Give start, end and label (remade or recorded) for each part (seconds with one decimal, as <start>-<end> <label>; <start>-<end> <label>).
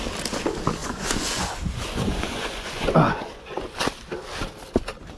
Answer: 0.0-0.8 recorded; 0.8-3.8 remade; 3.8-5.2 recorded